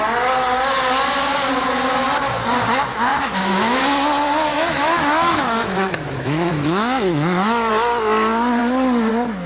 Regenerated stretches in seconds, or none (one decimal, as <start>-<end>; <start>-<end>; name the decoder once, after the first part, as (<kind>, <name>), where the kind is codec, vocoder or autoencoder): 3.1-3.8 (autoencoder, DAC-VAE); 4.5-7.7